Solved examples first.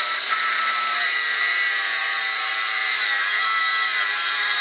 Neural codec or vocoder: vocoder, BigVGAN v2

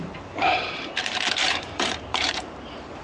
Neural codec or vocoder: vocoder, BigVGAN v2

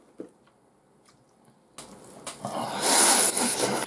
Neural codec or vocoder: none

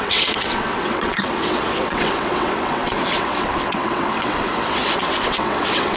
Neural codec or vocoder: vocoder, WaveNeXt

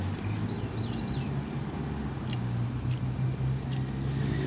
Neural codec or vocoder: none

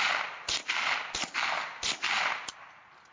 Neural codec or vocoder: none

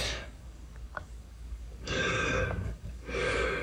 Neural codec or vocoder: codec, DAC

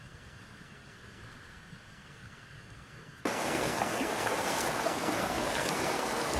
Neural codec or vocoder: codec, SNAC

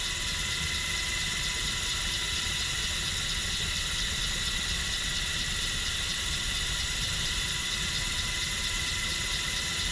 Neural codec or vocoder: none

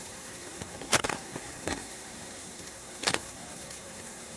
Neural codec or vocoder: codec, SNAC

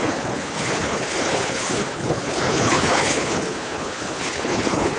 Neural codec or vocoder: codec, HILCodec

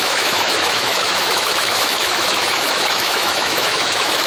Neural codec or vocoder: autoencoder, DAC-VAE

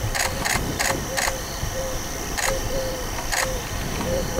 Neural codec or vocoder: vocoder, BigVGAN v2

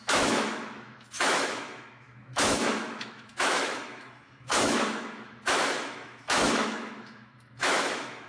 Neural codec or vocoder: autoencoder, DAC-VAE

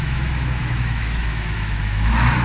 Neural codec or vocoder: autoencoder, DAC-VAE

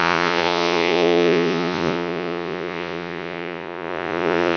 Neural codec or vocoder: vocoder, Vocos